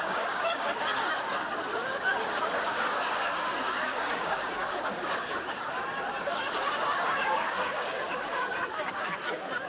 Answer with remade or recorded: remade